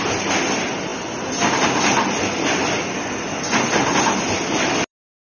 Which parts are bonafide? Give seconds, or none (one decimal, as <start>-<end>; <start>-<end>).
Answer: 0.0-5.2